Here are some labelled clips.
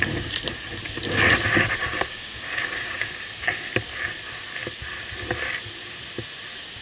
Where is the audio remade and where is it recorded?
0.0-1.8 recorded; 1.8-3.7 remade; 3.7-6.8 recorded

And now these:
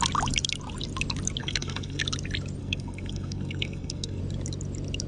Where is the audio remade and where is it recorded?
0.0-1.4 recorded; 1.4-2.0 remade; 2.0-2.6 recorded; 2.6-4.2 remade; 4.2-5.1 recorded

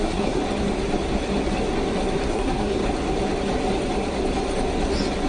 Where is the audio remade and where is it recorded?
0.0-0.4 remade; 0.4-2.3 recorded; 2.3-2.8 remade; 2.8-5.3 recorded

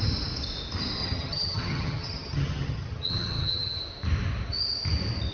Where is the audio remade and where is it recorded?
0.0-1.0 recorded; 1.0-3.8 remade; 3.8-5.3 recorded